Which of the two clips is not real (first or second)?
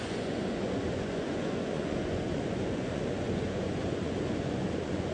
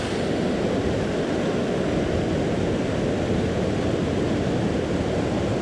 first